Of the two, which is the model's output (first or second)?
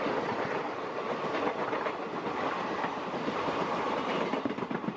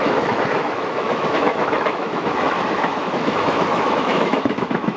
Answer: second